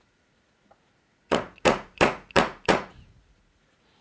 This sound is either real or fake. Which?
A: fake